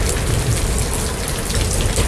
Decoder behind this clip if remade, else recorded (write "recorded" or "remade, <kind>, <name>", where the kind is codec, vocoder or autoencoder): recorded